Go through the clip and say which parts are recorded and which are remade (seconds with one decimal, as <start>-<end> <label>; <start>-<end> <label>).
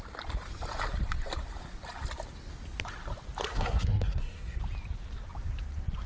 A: 0.0-3.5 recorded; 3.5-4.6 remade; 4.6-6.1 recorded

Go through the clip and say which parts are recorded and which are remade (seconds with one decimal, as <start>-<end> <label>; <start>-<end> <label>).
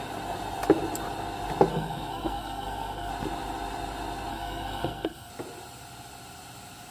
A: 0.0-1.7 recorded; 1.7-3.1 remade; 3.1-4.3 recorded; 4.3-5.3 remade; 5.3-6.9 recorded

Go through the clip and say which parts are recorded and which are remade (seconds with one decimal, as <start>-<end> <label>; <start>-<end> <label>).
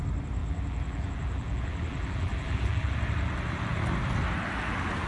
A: 0.0-0.4 recorded; 0.4-2.9 remade; 2.9-5.1 recorded